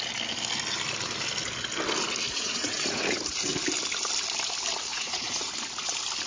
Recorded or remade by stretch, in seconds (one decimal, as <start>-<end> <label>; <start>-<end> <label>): 0.0-2.3 recorded; 2.3-3.2 remade; 3.2-4.9 recorded; 4.9-5.5 remade; 5.5-6.3 recorded